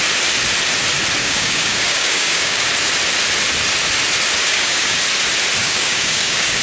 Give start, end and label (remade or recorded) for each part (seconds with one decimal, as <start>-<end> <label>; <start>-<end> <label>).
0.0-1.2 recorded; 1.2-2.7 remade; 2.7-4.4 recorded; 4.4-5.0 remade; 5.0-5.6 recorded; 5.6-6.6 remade